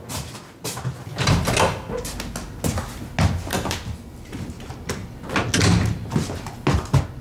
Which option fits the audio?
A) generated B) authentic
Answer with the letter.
B